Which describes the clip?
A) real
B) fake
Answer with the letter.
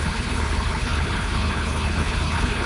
B